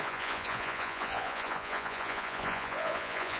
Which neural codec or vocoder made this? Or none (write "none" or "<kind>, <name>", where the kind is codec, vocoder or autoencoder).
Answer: vocoder, Vocos